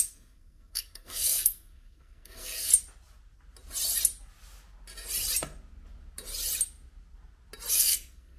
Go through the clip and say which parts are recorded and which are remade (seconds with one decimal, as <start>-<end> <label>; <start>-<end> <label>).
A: 0.0-2.7 remade; 2.7-7.7 recorded; 7.7-8.4 remade